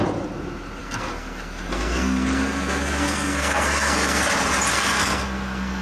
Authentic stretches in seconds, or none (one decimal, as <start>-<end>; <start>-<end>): 0.0-0.8; 4.3-4.7